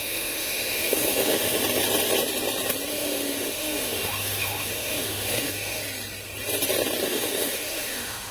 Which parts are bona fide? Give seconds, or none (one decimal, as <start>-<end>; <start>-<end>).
1.6-2.9; 5.8-7.0